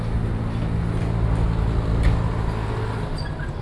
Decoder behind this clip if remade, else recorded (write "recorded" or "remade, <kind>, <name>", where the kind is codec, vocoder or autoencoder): recorded